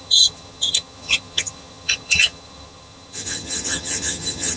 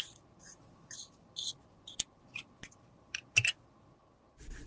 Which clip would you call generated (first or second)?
first